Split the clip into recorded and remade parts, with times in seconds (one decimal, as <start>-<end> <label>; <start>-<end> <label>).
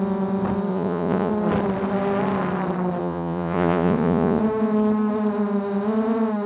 0.0-0.7 recorded; 0.7-1.3 remade; 1.3-3.0 recorded; 3.0-4.4 remade; 4.4-6.5 recorded